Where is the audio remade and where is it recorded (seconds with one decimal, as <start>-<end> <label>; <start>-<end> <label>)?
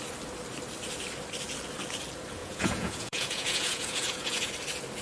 0.0-2.4 recorded; 2.4-4.5 remade; 4.5-5.0 recorded